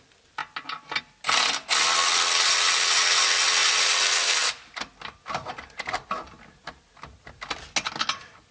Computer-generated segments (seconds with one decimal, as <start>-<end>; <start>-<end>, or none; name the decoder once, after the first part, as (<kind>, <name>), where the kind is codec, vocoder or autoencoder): none